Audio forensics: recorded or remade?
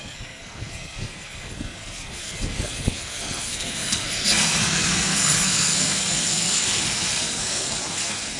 remade